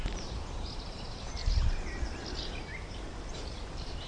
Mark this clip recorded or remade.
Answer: remade